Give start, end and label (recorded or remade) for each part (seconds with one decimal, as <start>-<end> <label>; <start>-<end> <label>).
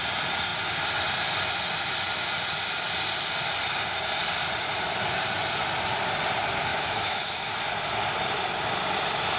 0.0-6.7 recorded; 6.7-7.6 remade; 7.6-9.4 recorded